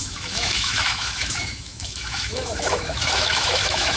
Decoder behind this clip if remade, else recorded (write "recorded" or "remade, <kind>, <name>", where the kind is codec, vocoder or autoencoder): remade, autoencoder, DAC-VAE